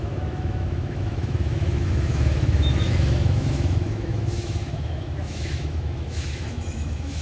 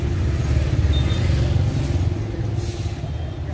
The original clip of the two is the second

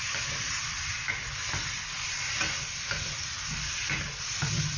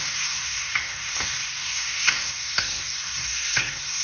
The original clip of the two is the first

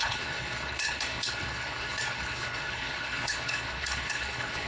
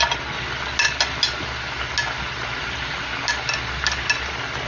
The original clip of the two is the second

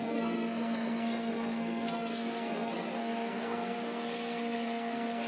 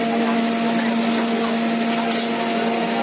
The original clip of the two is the second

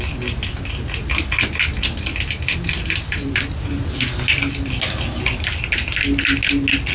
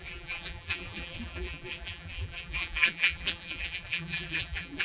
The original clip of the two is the first